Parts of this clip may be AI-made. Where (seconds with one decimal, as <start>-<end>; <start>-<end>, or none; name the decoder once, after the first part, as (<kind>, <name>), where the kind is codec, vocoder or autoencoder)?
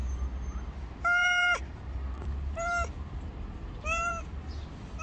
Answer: 1.2-4.1 (vocoder, BigVGAN v2)